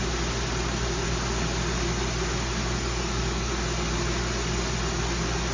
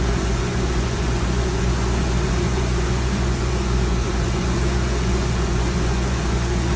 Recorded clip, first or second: first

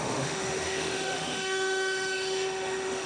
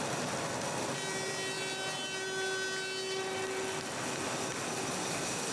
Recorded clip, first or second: second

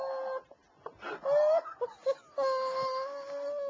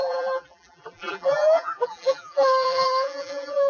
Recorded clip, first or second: first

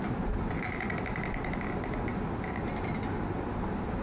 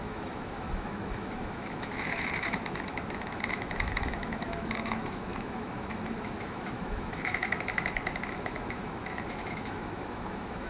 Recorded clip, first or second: first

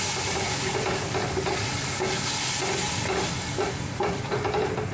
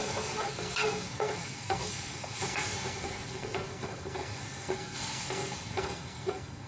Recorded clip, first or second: first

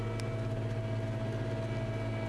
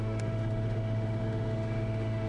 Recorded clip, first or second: first